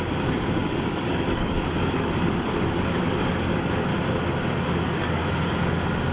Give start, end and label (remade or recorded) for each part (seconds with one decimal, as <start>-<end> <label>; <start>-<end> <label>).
0.0-3.9 remade; 3.9-4.7 recorded; 4.7-5.2 remade; 5.2-6.1 recorded